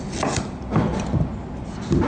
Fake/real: real